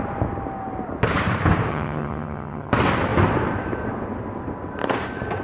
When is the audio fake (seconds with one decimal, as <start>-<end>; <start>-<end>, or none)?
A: 1.7-2.7